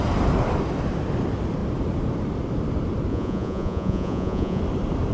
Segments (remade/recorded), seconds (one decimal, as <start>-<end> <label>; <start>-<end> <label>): 0.0-3.1 recorded; 3.1-4.6 remade; 4.6-5.1 recorded